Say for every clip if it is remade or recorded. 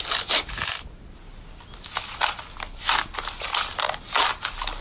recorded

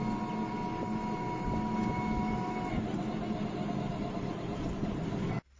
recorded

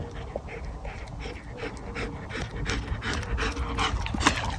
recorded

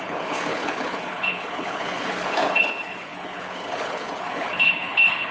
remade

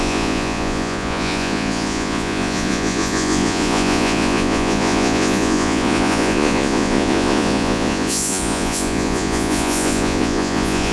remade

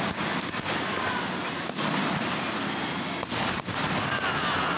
recorded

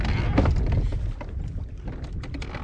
recorded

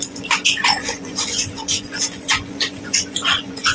remade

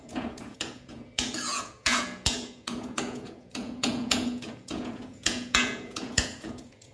remade